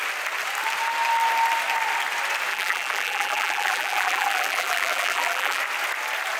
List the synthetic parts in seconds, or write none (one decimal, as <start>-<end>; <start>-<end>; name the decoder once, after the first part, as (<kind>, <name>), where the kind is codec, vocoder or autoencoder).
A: 2.5-5.6 (vocoder, BigVGAN v2)